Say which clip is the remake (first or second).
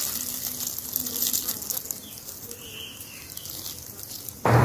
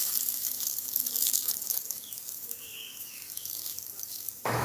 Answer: second